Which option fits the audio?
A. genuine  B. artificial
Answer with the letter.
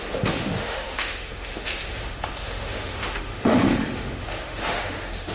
B